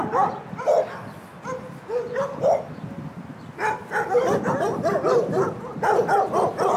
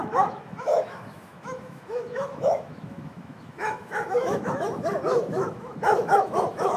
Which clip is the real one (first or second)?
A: first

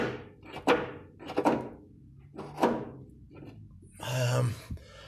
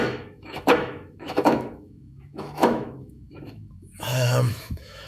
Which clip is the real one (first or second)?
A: first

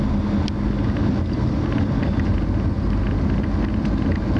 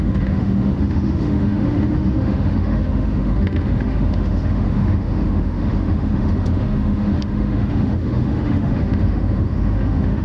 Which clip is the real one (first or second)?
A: first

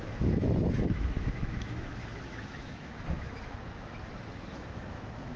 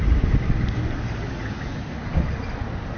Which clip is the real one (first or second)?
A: second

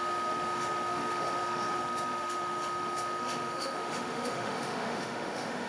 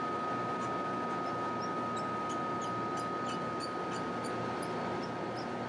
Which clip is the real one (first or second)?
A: second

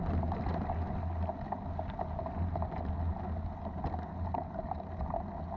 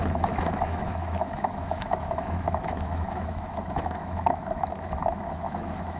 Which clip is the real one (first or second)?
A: first